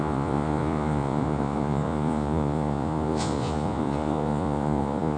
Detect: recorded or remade remade